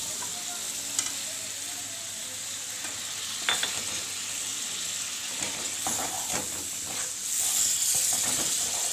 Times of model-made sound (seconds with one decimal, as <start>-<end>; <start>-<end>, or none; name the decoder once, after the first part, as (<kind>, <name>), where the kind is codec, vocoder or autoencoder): none